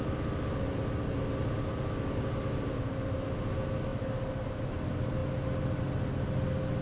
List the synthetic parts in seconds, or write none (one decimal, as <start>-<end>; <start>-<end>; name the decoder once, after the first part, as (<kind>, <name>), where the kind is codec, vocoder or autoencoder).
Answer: none